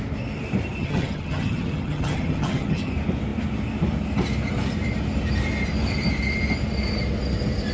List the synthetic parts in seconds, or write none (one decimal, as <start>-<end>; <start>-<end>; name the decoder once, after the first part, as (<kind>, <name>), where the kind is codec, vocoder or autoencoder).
0.8-2.9 (vocoder, HiFi-GAN)